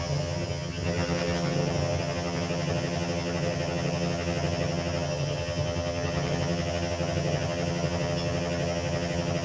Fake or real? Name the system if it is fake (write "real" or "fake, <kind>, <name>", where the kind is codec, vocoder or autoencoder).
fake, vocoder, HiFi-GAN